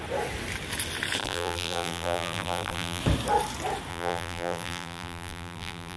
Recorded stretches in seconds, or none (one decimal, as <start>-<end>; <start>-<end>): 0.0-1.2; 3.0-3.9